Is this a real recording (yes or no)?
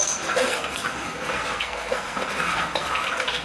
no